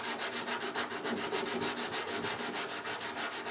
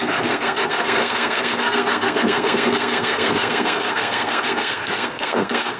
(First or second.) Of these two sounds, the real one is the first